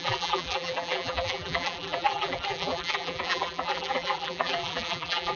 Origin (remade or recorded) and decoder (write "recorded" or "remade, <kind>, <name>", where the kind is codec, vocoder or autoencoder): remade, vocoder, BigVGAN v2